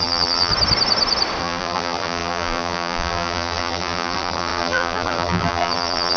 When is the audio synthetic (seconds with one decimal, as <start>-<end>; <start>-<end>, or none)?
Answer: 0.0-0.5; 1.4-6.2